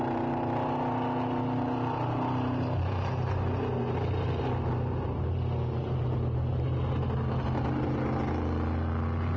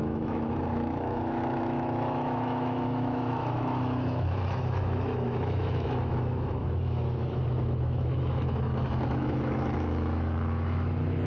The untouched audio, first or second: first